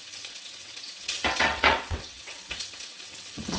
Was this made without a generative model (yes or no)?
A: no